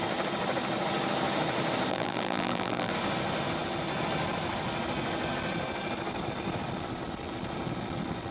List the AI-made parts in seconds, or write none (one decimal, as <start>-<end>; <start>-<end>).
1.9-2.9